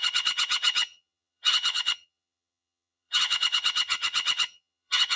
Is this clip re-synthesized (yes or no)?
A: yes